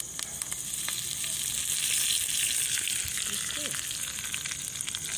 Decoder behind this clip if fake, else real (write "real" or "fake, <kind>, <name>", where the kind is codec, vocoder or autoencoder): real